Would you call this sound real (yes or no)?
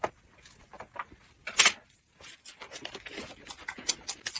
yes